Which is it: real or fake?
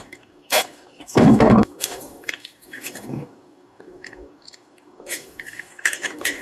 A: fake